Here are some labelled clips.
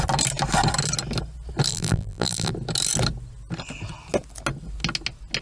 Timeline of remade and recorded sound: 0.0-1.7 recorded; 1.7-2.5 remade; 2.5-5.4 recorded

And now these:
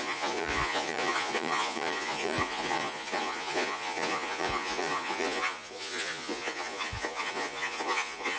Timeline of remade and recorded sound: 0.0-8.4 remade

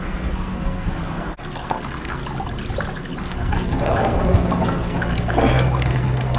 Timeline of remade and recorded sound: 0.0-2.2 remade; 2.2-3.2 recorded; 3.2-6.4 remade

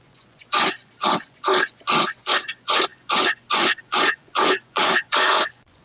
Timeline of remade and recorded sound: 0.0-5.8 remade

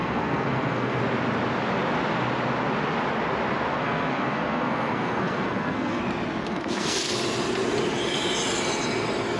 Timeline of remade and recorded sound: 0.0-1.0 remade; 1.0-3.7 recorded; 3.7-6.0 remade; 6.0-6.4 recorded; 6.4-7.2 remade; 7.2-9.4 recorded

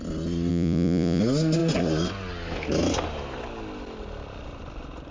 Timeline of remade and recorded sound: 0.0-0.5 recorded; 0.5-1.2 remade; 1.2-5.1 recorded